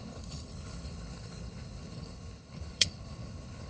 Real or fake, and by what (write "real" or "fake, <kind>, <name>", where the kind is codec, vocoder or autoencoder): fake, codec, HILCodec